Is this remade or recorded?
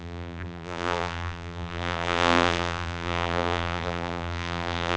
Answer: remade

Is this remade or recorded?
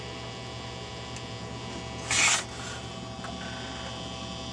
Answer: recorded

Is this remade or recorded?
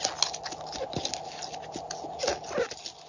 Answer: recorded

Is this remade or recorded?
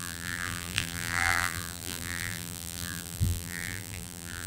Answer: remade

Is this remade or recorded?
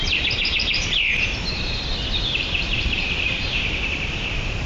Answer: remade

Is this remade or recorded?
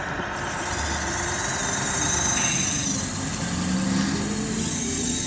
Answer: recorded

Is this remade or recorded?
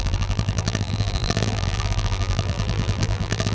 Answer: remade